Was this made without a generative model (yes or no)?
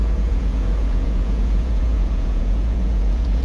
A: no